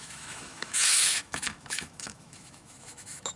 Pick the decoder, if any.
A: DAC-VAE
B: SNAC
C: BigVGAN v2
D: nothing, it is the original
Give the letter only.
A